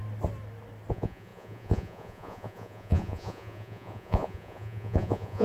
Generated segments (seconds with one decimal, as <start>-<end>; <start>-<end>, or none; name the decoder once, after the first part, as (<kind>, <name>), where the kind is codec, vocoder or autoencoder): 0.9-5.4 (vocoder, Vocos)

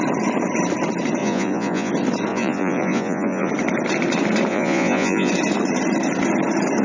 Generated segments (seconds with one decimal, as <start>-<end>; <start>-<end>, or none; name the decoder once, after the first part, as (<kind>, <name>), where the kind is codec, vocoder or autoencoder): 1.2-1.9 (vocoder, Vocos); 2.3-3.5; 4.5-5.3

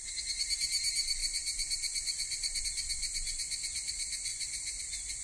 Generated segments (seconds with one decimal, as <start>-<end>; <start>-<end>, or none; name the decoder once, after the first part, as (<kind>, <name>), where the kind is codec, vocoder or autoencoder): 1.2-2.6 (vocoder, Vocos); 3.0-3.9; 4.3-4.8